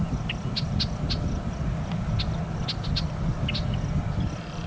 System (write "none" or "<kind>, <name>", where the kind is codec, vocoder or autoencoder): none